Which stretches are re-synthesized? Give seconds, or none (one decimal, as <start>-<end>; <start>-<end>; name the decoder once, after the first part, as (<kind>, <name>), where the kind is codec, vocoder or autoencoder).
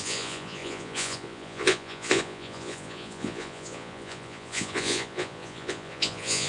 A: 0.0-6.5 (vocoder, Vocos)